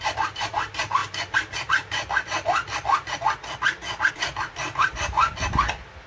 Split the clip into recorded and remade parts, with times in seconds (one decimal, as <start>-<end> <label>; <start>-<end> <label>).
0.0-1.0 remade; 1.0-4.1 recorded; 4.1-5.2 remade; 5.2-6.1 recorded